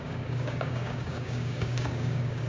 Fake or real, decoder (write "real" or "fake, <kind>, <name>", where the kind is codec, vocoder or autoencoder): fake, codec, DAC